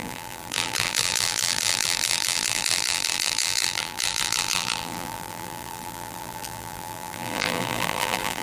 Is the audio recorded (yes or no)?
no